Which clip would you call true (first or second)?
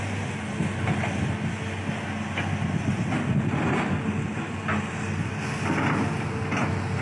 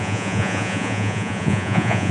first